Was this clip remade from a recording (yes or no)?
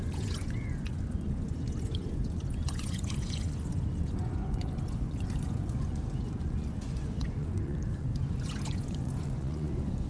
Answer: yes